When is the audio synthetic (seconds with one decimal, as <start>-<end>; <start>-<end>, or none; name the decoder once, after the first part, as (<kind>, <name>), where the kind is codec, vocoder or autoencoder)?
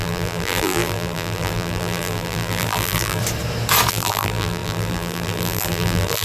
0.0-3.2 (vocoder, BigVGAN v2); 3.9-6.2